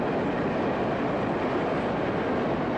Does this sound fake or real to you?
real